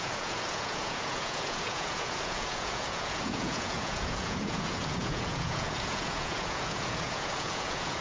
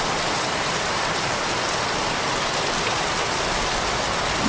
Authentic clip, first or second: second